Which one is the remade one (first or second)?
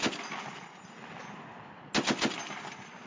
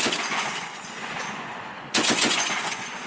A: second